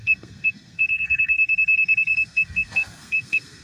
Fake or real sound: fake